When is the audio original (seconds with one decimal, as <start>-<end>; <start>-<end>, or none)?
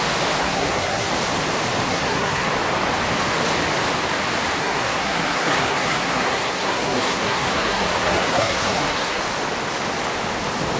0.0-0.4; 1.1-1.9; 2.5-4.6; 9.2-10.8